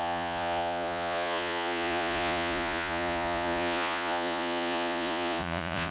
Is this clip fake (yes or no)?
yes